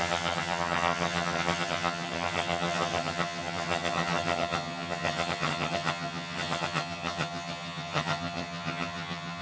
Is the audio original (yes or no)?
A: no